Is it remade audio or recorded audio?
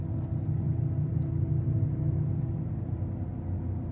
recorded